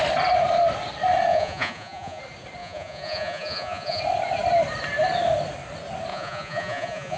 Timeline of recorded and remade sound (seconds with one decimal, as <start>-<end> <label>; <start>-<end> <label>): 0.0-1.3 recorded; 1.3-2.2 remade; 2.2-2.6 recorded; 2.6-4.0 remade; 4.0-6.1 recorded; 6.1-7.2 remade